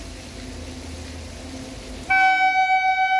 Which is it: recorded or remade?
recorded